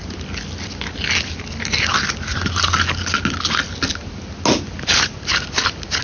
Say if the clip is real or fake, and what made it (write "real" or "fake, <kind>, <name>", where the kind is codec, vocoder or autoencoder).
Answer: real